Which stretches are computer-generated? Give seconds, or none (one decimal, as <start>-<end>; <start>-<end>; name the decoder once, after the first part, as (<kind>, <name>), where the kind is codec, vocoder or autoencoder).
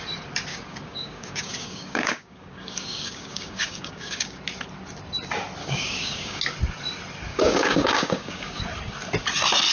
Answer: 0.5-4.4 (codec, DAC); 5.6-6.4; 7.3-8.6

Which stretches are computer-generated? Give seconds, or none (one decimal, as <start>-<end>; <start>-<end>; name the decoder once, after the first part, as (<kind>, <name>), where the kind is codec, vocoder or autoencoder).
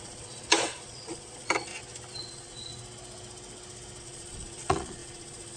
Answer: 0.0-1.7 (vocoder, Vocos); 2.3-2.7; 4.0-5.6